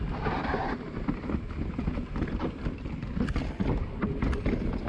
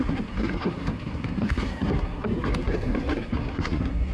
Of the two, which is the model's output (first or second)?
second